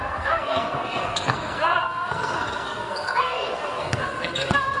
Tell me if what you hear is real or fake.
fake